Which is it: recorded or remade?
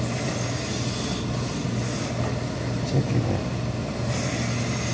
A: recorded